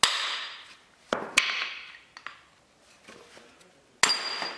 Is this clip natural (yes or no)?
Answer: yes